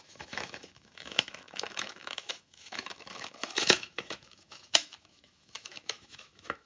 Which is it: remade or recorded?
remade